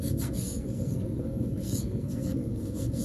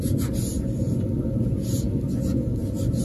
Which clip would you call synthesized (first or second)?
first